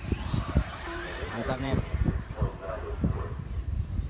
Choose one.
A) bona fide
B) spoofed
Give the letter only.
B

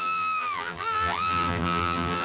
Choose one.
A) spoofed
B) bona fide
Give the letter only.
A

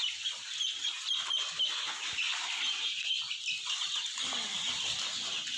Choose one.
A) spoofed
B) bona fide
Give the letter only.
B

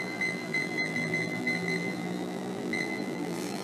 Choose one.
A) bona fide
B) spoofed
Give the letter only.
B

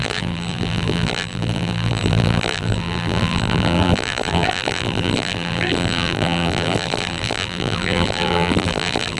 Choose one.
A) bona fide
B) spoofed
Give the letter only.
B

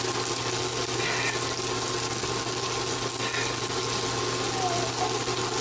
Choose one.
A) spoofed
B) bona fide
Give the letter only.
B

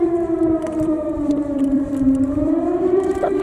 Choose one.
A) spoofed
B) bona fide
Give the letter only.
A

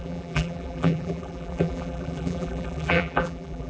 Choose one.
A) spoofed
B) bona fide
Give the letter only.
A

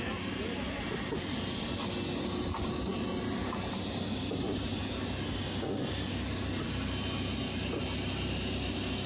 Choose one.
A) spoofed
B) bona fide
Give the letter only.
B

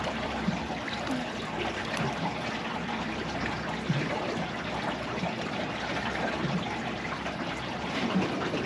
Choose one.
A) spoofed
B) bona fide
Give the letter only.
A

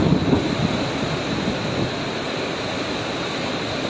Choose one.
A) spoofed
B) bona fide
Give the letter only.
A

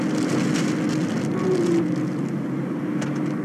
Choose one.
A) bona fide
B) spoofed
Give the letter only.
A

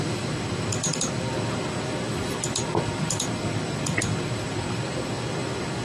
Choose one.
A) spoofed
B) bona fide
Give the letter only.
A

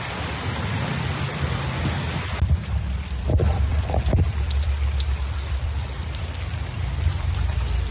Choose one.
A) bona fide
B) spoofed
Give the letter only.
B